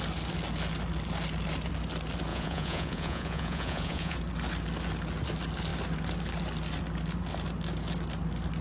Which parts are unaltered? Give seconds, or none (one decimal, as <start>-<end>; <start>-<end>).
0.0-2.3; 4.2-8.6